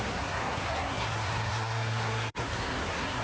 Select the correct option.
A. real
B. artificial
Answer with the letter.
B